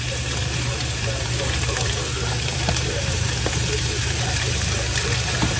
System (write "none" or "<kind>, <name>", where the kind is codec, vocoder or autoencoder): vocoder, BigVGAN v2